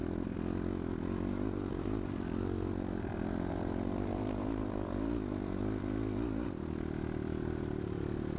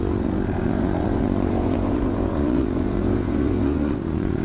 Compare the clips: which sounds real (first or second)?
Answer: first